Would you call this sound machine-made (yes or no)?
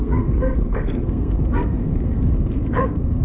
yes